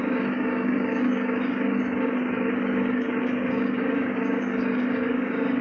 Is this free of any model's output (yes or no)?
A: no